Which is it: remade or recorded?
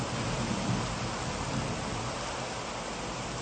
recorded